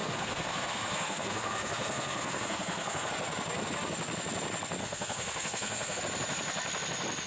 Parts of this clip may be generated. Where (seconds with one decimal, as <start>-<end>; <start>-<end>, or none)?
0.0-3.1; 4.8-6.0